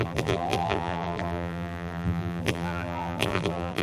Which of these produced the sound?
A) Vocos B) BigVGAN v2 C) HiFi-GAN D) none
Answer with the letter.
B